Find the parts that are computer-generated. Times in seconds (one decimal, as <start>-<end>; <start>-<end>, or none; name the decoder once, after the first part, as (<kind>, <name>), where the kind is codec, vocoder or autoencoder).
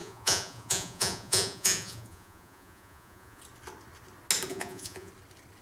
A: 0.0-3.4 (vocoder, Vocos); 4.5-5.1